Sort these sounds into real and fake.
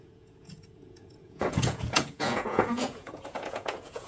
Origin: fake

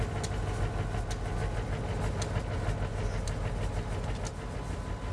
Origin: real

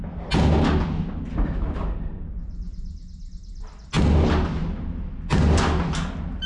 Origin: real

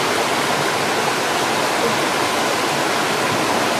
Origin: real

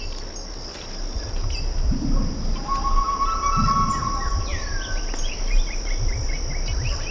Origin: real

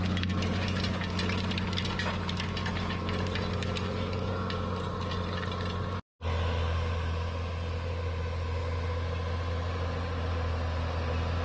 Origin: real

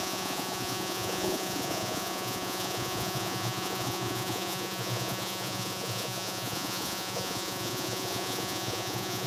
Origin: fake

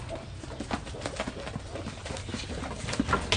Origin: real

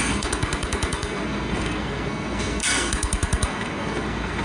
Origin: fake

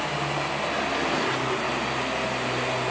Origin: real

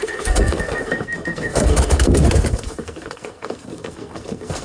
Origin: fake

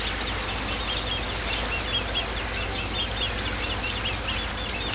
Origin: real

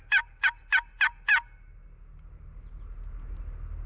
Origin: real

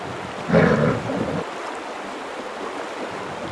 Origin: real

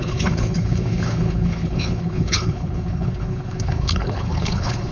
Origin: fake